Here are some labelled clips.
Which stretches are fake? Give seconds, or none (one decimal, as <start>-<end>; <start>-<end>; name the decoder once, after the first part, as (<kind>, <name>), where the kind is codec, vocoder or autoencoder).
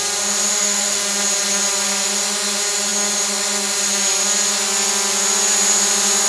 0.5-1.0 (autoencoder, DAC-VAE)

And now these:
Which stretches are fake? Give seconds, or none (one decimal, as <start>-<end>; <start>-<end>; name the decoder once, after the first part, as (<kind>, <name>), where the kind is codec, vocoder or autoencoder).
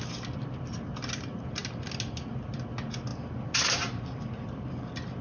none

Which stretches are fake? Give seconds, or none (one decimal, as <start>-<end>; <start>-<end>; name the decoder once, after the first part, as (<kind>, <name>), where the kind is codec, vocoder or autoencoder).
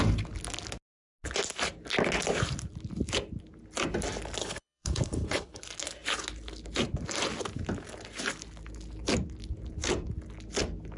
4.4-5.6 (codec, HILCodec)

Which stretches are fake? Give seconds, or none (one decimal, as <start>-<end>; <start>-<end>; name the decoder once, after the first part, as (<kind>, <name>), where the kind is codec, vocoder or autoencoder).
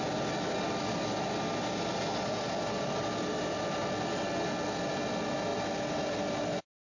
none